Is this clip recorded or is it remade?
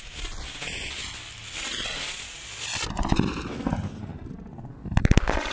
recorded